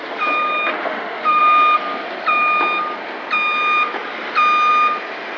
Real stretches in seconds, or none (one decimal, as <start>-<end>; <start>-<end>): 0.0-0.7; 1.4-5.4